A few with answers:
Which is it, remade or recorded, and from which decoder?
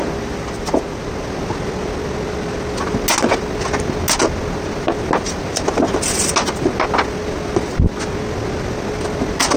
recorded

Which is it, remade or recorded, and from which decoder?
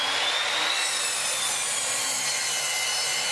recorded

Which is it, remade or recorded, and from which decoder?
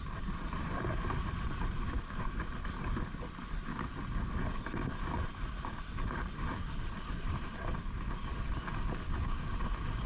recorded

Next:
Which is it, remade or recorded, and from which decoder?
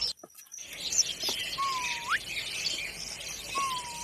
recorded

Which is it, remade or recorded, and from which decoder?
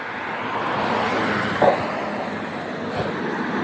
recorded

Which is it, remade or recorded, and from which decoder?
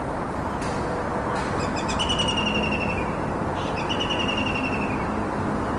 recorded